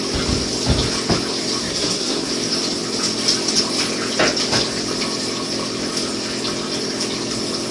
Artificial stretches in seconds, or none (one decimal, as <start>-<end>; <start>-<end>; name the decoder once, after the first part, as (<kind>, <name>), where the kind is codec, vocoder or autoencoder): 1.6-2.3 (codec, SNAC)